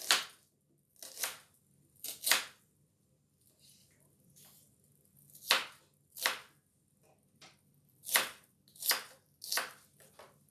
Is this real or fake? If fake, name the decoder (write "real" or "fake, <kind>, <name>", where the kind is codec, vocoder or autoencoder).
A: real